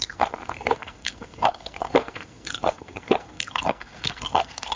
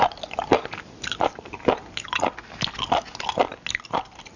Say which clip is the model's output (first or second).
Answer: first